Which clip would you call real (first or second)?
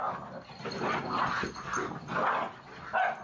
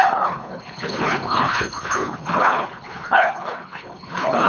first